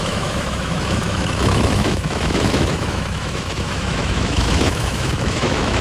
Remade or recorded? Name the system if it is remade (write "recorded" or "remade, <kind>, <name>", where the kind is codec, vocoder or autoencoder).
remade, autoencoder, DAC-VAE